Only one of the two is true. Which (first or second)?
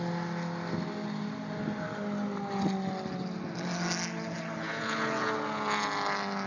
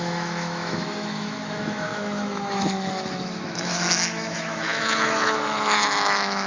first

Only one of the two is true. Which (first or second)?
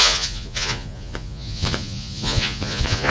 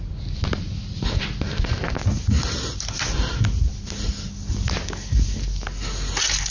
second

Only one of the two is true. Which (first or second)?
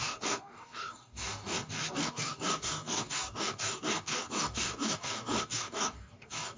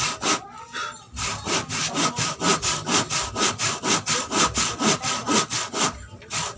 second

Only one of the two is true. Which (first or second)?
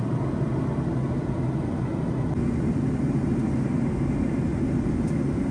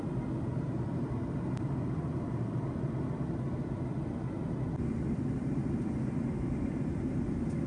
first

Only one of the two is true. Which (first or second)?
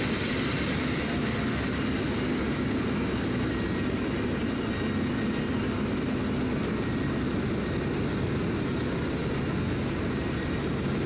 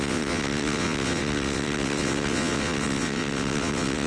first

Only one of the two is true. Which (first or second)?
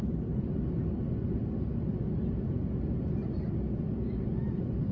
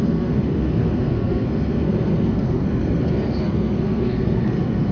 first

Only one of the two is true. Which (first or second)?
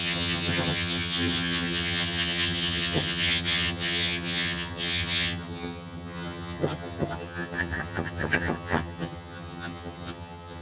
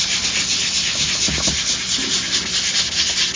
second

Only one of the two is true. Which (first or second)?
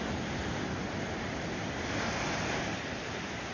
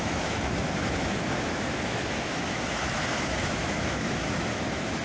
first